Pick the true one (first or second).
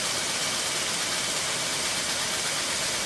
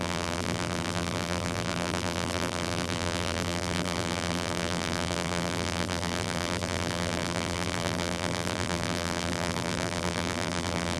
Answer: first